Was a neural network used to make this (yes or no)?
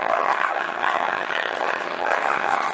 yes